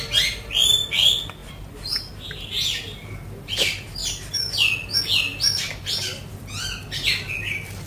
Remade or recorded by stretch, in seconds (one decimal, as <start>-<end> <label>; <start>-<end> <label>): 0.0-1.4 recorded; 1.4-2.1 remade; 2.1-4.0 recorded; 4.0-4.5 remade; 4.5-5.3 recorded; 5.3-6.3 remade; 6.3-7.9 recorded